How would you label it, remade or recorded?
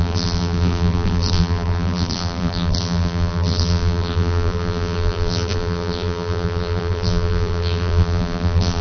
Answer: remade